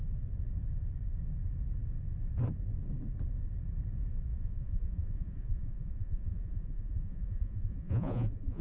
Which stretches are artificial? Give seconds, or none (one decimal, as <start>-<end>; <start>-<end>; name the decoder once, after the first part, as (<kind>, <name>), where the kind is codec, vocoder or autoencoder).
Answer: 4.3-8.6 (vocoder, Vocos)